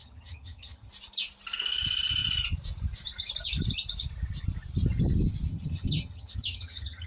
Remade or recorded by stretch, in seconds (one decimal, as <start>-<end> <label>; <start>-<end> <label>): 0.0-0.9 remade; 0.9-5.5 recorded; 5.5-7.1 remade